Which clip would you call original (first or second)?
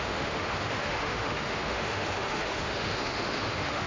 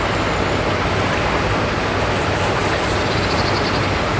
second